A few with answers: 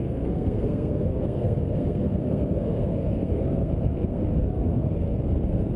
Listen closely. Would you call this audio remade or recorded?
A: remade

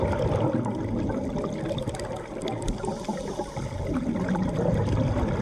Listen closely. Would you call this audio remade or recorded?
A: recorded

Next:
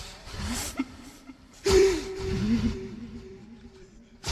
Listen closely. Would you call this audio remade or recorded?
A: remade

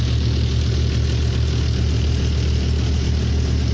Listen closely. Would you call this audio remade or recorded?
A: recorded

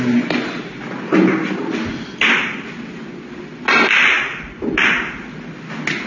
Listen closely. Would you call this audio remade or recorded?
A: recorded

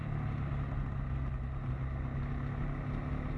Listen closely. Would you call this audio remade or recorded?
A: recorded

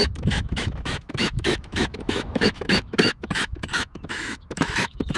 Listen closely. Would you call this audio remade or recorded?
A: remade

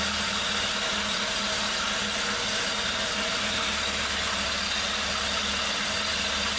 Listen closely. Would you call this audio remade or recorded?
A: recorded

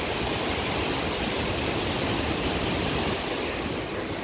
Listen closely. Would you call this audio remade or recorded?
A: recorded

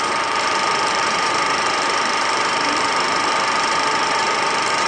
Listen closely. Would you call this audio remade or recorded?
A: remade